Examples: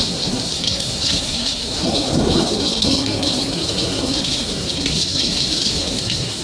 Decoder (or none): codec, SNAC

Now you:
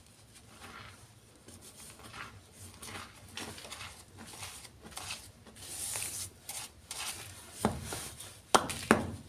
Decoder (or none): none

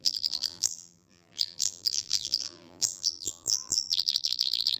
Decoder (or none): vocoder, BigVGAN v2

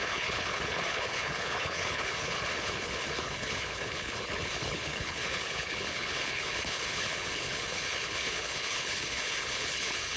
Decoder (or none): codec, HILCodec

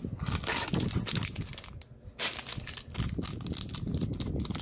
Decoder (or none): none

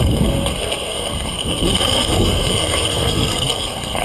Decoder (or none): codec, SNAC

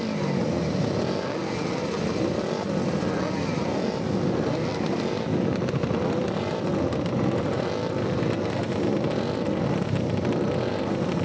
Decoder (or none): none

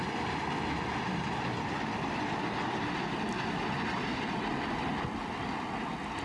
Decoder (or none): none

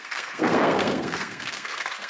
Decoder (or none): codec, SNAC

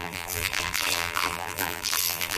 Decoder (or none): vocoder, BigVGAN v2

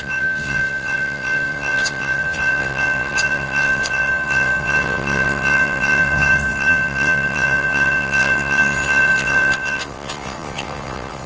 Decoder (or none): vocoder, WaveNeXt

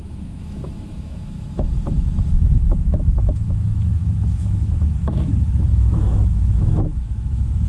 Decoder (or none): autoencoder, DAC-VAE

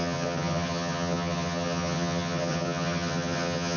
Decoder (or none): vocoder, HiFi-GAN